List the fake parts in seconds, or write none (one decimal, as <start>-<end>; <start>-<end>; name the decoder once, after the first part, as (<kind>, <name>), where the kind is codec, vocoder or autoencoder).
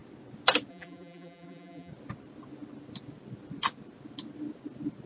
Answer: 0.7-1.9 (vocoder, BigVGAN v2)